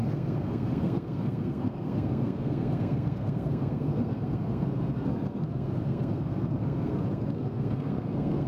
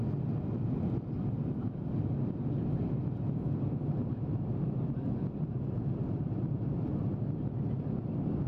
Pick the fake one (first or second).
first